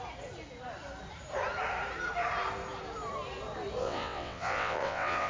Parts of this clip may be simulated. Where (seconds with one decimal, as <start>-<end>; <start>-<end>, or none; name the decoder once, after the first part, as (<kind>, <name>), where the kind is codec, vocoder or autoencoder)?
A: 3.8-5.3 (vocoder, WaveNeXt)